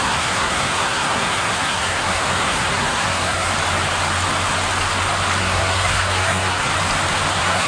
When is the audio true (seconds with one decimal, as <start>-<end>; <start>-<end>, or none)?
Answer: 3.5-5.4; 6.7-7.3